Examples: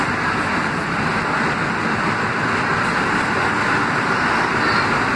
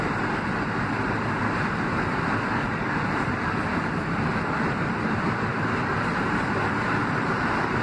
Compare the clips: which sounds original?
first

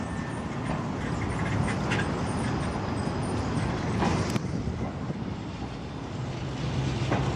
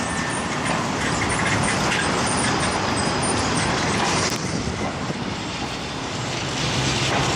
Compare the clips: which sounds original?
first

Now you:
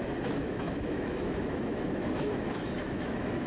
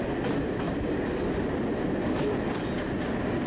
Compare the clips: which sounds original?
second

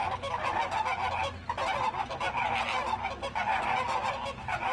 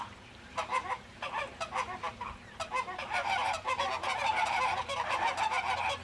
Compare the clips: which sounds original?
first